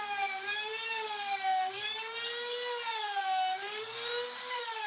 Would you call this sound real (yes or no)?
no